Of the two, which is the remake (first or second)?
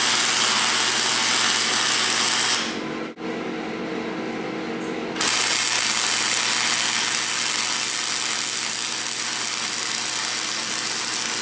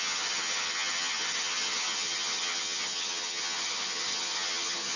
second